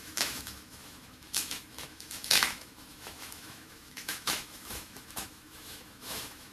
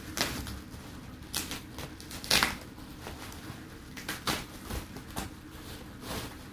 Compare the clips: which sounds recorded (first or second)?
second